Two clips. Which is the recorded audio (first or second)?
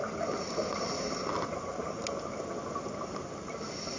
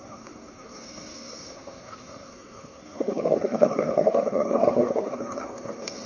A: first